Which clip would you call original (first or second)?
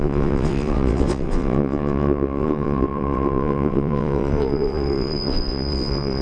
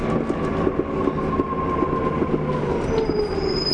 second